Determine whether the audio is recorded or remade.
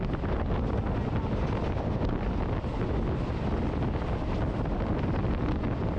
recorded